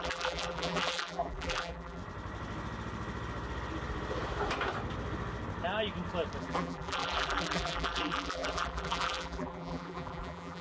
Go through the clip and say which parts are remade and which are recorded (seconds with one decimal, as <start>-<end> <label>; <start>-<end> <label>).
0.0-2.0 remade; 2.0-6.4 recorded; 6.4-10.6 remade